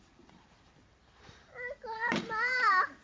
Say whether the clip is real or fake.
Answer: fake